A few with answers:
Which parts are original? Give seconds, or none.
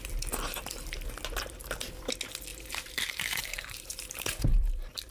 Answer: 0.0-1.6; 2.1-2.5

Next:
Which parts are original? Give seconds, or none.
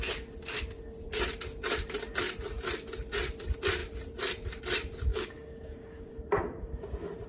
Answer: 0.0-5.1; 6.1-7.3